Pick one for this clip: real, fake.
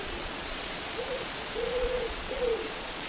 fake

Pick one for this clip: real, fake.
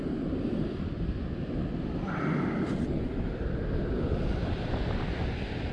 real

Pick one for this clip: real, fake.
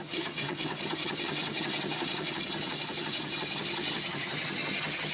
fake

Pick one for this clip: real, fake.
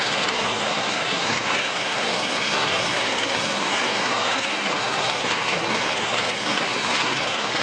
fake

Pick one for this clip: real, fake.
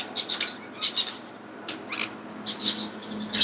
real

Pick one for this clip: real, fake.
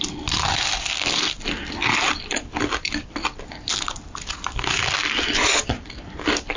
real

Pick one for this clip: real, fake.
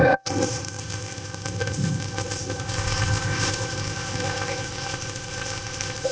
fake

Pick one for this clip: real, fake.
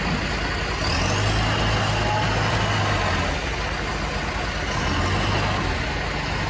real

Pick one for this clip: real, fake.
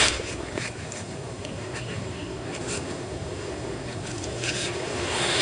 fake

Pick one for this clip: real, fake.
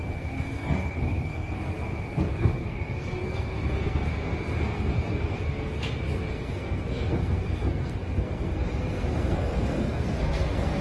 fake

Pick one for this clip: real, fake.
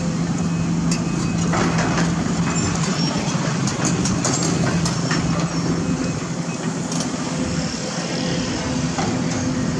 real